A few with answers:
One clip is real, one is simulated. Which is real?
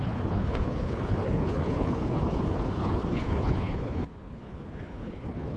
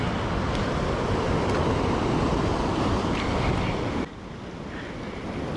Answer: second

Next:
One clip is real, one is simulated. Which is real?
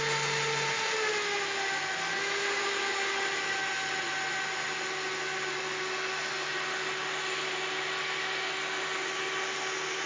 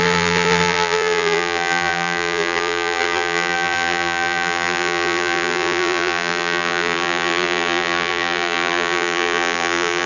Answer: first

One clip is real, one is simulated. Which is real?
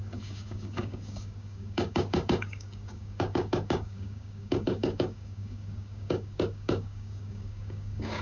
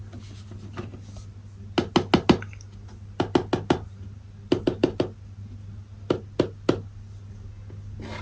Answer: second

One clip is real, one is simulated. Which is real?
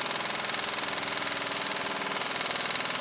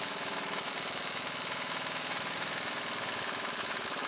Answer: first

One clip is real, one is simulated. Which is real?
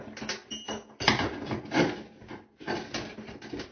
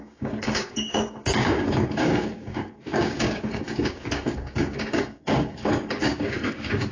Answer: first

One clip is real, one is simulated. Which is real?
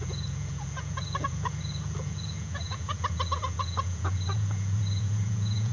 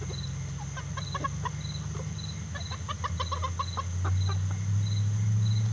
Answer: second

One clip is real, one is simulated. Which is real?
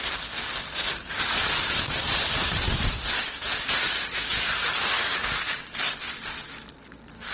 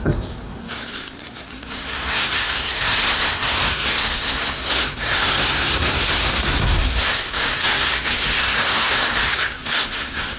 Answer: first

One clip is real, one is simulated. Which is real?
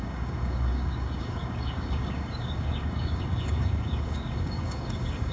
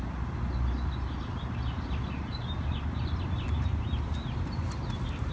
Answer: second